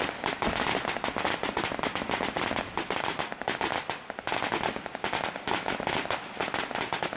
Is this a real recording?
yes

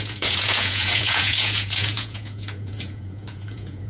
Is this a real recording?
no